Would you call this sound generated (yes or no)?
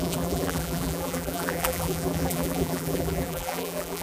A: yes